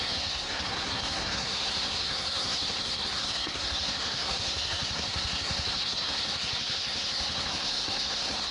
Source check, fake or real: fake